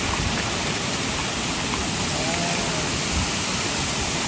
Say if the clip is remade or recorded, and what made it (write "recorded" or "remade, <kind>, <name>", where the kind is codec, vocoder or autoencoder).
recorded